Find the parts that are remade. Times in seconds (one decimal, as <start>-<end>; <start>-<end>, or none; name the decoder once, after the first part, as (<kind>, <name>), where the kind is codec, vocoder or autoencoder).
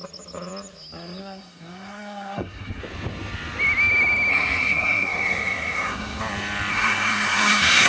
1.2-2.8 (codec, SNAC); 4.3-6.2; 6.7-7.9